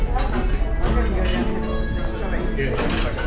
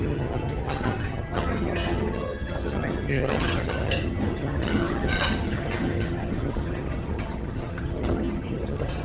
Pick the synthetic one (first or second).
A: second